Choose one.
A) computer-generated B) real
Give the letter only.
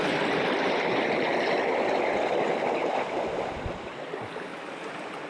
B